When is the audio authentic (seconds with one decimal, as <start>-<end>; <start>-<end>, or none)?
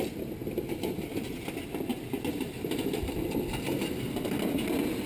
0.4-1.0